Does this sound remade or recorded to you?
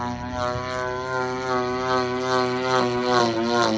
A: recorded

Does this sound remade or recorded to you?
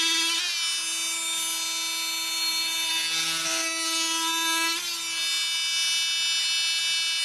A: recorded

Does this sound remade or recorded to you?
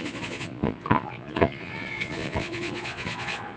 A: remade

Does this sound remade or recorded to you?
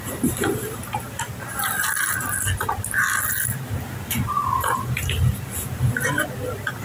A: recorded